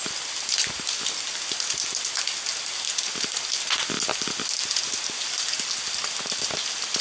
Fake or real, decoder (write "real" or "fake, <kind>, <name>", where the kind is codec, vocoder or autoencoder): real